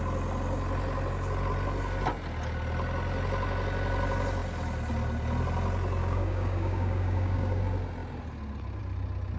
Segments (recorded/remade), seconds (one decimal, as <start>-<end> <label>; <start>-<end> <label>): 0.0-6.0 recorded; 6.0-7.6 remade; 7.6-9.4 recorded